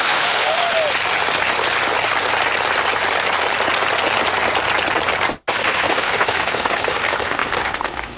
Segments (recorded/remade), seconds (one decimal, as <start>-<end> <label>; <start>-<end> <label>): 0.0-0.6 remade; 0.6-5.5 recorded; 5.5-8.2 remade